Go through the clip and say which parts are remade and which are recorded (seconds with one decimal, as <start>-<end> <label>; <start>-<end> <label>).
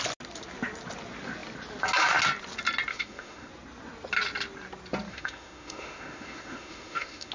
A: 0.0-2.9 recorded; 2.9-3.5 remade; 3.5-5.1 recorded; 5.1-7.3 remade